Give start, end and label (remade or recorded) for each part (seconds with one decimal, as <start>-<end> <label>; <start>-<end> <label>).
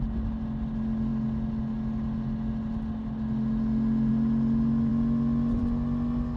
0.0-6.4 recorded